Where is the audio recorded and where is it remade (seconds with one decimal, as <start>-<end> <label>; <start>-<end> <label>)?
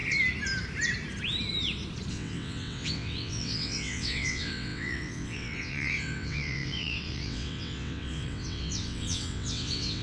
0.0-2.1 recorded; 2.1-10.0 remade